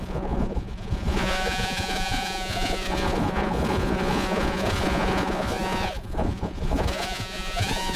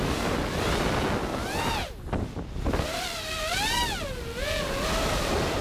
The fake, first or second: first